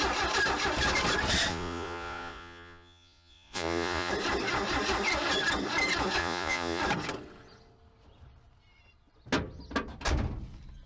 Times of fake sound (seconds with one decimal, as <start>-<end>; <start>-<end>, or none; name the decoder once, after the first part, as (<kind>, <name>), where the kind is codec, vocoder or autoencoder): 1.5-4.1 (vocoder, Vocos); 6.2-6.8